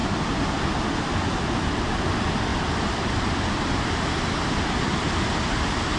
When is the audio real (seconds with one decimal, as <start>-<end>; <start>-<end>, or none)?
1.1-2.5